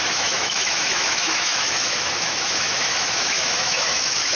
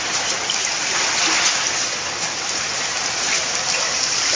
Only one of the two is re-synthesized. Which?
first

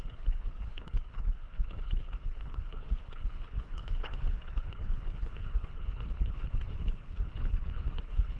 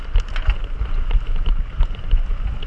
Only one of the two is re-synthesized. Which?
first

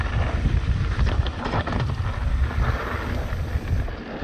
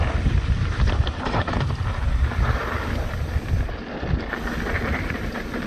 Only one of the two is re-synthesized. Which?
second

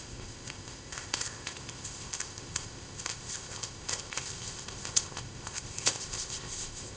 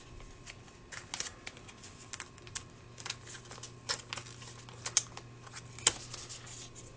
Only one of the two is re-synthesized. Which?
first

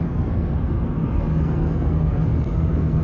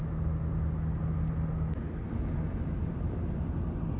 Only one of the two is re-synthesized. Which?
first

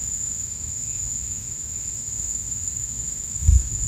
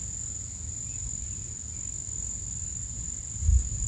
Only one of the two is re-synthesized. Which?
first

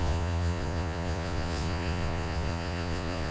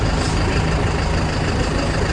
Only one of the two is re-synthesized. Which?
first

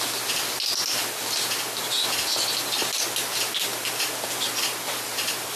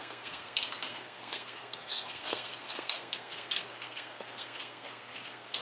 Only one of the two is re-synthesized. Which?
second